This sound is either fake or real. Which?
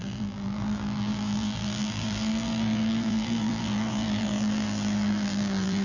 fake